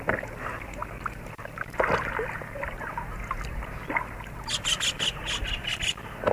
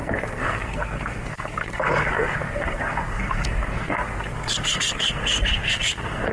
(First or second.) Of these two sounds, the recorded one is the first